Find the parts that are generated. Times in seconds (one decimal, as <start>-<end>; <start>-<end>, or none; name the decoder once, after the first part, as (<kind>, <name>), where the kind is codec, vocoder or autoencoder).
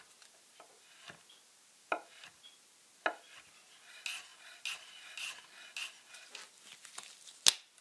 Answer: none